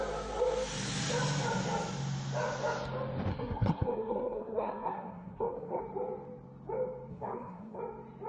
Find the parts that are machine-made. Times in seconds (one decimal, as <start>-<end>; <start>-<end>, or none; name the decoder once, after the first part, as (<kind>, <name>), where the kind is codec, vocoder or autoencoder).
3.3-5.8 (codec, SNAC); 7.1-7.8